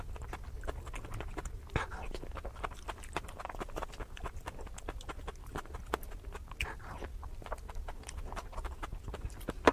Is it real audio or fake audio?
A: real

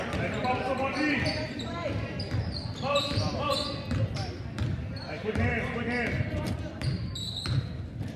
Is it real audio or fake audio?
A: fake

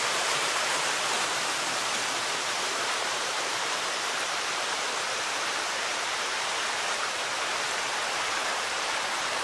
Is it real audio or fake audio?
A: fake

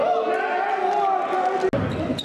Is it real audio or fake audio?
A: real